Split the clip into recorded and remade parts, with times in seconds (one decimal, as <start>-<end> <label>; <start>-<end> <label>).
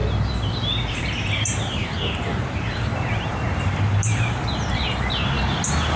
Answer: 0.0-0.9 recorded; 0.9-6.0 remade